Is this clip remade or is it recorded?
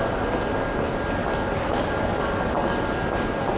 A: recorded